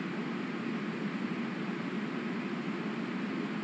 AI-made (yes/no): no